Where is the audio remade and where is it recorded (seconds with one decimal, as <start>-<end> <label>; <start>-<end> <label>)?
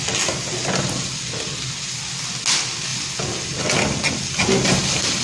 0.0-5.2 recorded